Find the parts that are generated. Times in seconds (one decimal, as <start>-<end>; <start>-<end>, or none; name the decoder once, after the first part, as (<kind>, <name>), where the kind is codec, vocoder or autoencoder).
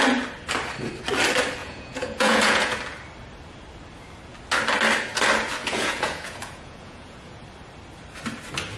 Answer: 1.6-2.8 (vocoder, Vocos); 5.6-7.4